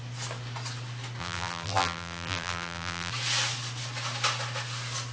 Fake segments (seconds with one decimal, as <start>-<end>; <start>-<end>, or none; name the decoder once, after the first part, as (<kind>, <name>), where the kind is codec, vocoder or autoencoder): 1.2-3.1 (vocoder, BigVGAN v2)